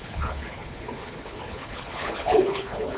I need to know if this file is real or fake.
fake